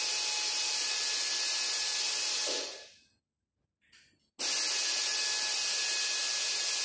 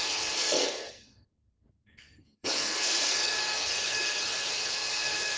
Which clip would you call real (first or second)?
first